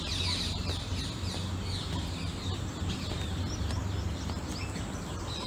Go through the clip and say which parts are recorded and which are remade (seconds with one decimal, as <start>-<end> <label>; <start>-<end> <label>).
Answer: 0.0-5.5 recorded